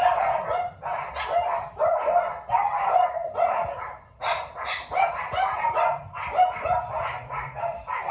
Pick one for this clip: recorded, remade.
recorded